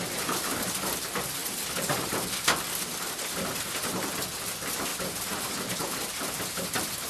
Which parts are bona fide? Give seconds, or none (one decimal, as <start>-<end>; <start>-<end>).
0.0-7.1